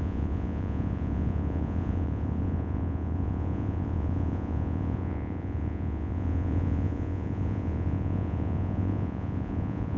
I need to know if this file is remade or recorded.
remade